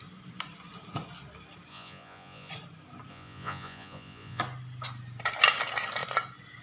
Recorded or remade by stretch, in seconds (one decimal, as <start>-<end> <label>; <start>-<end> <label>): 0.0-1.7 recorded; 1.7-2.5 remade; 2.5-3.1 recorded; 3.1-4.4 remade; 4.4-6.6 recorded